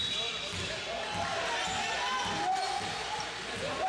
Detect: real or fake real